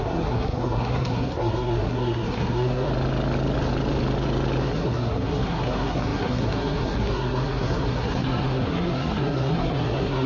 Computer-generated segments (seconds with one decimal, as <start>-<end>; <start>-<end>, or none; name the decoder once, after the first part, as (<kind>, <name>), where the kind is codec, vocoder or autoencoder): 0.0-2.9 (codec, SNAC); 4.6-10.3